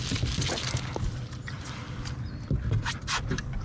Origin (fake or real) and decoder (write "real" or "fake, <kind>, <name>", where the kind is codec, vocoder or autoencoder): real